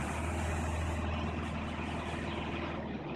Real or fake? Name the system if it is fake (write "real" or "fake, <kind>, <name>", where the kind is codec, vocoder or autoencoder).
real